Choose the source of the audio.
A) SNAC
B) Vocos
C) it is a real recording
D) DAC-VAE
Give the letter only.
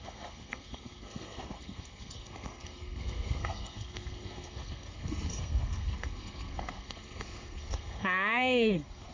A